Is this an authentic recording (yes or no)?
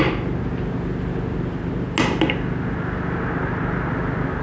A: yes